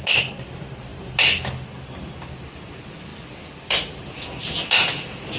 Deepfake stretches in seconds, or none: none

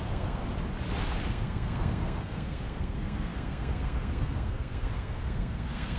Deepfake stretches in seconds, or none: 0.0-0.4; 1.3-6.0

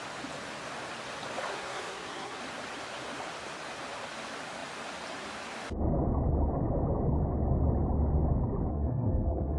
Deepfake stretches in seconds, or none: 1.5-2.4; 8.7-9.6

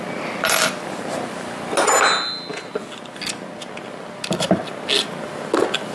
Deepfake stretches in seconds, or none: none

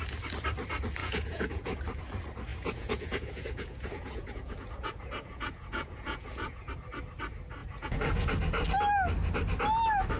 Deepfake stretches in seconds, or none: 1.0-1.8; 2.5-6.7; 7.6-8.3

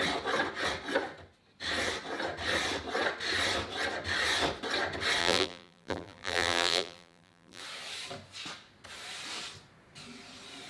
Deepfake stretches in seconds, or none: 5.2-7.6

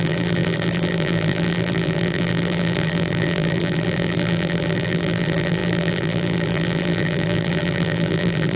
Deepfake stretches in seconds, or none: 0.0-8.6